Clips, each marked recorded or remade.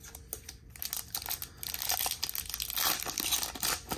recorded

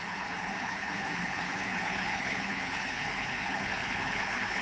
remade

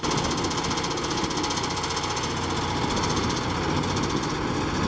recorded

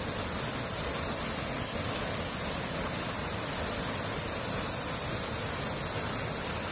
recorded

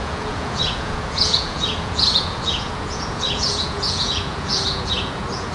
remade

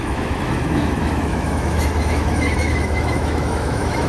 remade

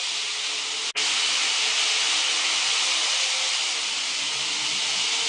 recorded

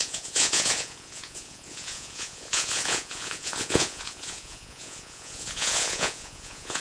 remade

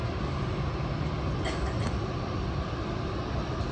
recorded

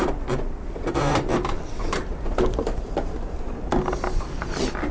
remade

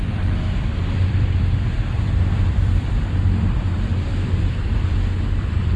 remade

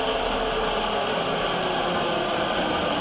recorded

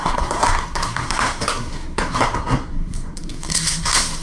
remade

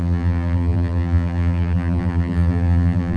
remade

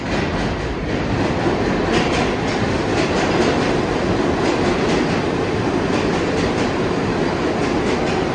recorded